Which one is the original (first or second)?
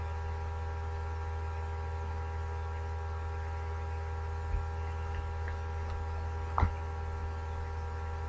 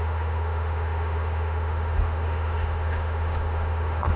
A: first